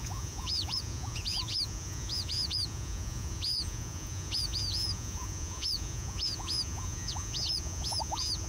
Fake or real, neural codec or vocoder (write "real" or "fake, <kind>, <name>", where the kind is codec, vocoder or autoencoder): fake, vocoder, Vocos